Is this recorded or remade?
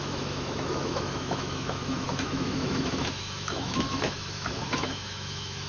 remade